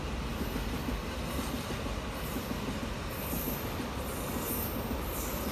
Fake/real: real